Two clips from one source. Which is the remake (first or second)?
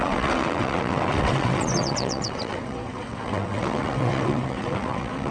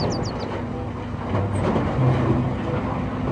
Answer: first